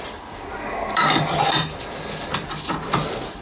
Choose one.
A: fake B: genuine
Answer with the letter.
B